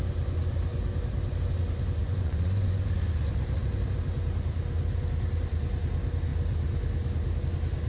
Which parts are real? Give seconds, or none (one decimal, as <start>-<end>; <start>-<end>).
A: 0.0-2.0; 2.9-7.9